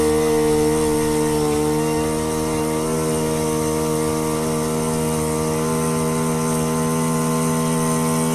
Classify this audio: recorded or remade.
recorded